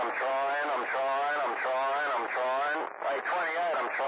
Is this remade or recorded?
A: recorded